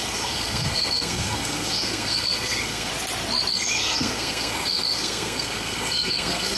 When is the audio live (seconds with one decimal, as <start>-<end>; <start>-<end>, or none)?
2.9-3.5